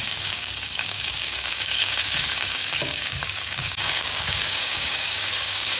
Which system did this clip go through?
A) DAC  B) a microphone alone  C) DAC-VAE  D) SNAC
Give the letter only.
A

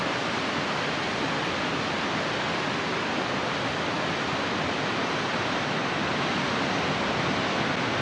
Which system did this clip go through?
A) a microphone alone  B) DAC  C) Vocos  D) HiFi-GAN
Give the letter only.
A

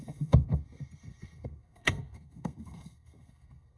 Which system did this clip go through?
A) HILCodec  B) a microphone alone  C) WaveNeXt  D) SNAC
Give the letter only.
D